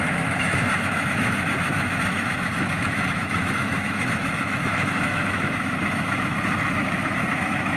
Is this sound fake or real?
fake